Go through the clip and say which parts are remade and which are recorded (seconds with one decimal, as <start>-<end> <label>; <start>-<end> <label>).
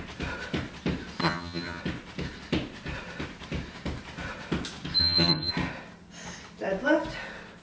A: 0.0-1.2 recorded; 1.2-1.8 remade; 1.8-5.0 recorded; 5.0-5.5 remade; 5.5-7.6 recorded